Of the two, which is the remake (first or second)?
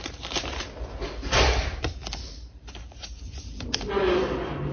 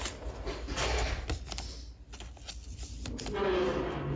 first